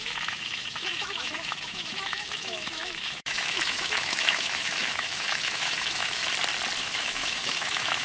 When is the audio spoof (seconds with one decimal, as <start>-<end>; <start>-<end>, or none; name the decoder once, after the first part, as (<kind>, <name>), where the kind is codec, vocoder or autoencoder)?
0.0-6.2 (autoencoder, DAC-VAE); 6.8-8.0

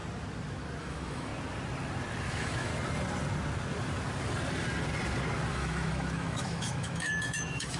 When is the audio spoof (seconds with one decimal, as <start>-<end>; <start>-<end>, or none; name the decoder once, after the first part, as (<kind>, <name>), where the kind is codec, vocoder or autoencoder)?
0.8-1.3 (autoencoder, DAC-VAE); 2.3-2.7; 5.5-7.8

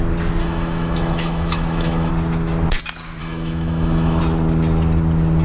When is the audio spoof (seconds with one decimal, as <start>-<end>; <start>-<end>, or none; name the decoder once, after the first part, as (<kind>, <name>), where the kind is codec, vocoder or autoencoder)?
0.4-2.1 (autoencoder, DAC-VAE); 3.2-4.2

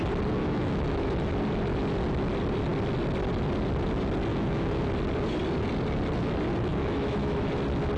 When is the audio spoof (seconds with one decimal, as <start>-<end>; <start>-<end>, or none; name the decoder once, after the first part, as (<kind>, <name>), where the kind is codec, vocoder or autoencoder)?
0.4-1.3 (autoencoder, DAC-VAE); 4.3-4.8; 6.7-7.5

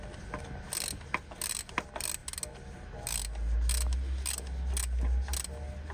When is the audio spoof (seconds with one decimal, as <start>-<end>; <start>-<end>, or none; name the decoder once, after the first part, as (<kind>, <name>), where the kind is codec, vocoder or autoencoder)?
none